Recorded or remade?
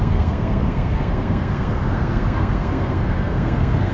remade